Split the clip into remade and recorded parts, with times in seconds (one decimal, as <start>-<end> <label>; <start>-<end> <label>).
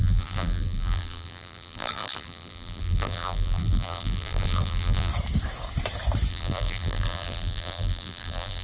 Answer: 0.0-5.1 remade; 5.1-6.3 recorded; 6.3-8.6 remade